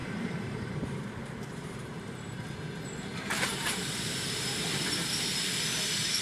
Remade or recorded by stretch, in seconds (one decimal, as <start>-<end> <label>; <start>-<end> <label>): 0.0-2.4 remade; 2.4-3.1 recorded; 3.1-4.1 remade; 4.1-6.2 recorded